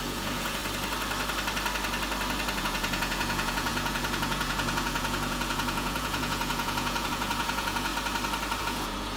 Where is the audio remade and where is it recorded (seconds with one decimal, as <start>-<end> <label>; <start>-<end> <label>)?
0.0-0.6 remade; 0.6-2.6 recorded; 2.6-7.9 remade; 7.9-8.6 recorded; 8.6-9.2 remade